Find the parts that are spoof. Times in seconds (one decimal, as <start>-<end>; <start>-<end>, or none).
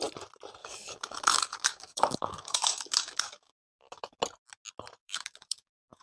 0.6-4.2; 5.0-6.0